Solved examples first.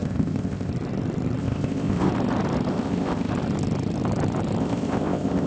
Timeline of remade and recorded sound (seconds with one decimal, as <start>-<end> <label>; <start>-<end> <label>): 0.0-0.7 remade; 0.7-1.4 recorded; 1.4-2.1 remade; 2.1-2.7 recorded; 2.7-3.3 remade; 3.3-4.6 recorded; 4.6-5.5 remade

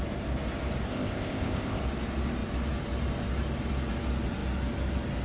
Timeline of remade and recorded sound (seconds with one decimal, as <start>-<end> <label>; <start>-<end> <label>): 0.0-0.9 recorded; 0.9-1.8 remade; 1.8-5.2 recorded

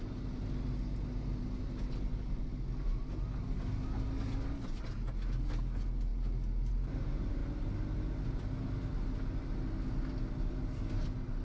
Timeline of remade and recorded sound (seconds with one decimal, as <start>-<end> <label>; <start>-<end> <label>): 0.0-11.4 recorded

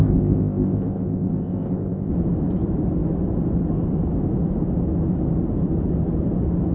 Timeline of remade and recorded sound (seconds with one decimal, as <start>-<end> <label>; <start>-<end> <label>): 0.0-2.1 remade; 2.1-6.7 recorded

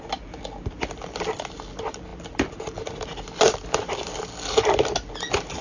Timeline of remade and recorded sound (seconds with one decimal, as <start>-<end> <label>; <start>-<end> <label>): 0.0-5.6 recorded